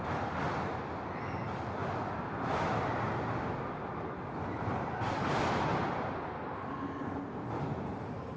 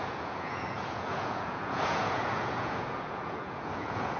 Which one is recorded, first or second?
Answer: first